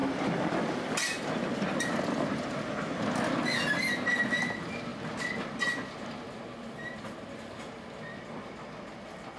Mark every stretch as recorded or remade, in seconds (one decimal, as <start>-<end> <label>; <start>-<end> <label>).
0.0-9.4 recorded